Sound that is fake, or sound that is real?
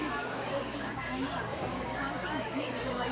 fake